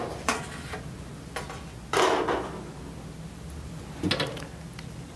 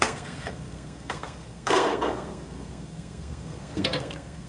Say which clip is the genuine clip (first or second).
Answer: first